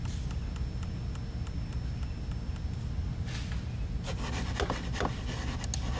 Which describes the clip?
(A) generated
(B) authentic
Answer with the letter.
B